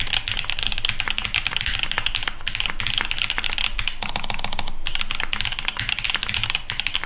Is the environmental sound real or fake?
real